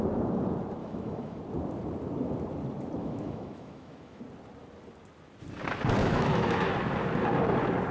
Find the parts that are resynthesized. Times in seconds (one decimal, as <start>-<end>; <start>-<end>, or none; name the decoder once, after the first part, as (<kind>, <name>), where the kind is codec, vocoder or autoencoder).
0.8-1.4 (autoencoder, DAC-VAE); 3.0-4.2; 6.0-6.7